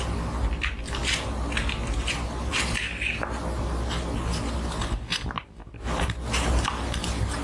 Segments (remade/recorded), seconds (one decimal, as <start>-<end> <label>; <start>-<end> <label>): 0.0-1.0 remade; 1.0-2.5 recorded; 2.5-7.4 remade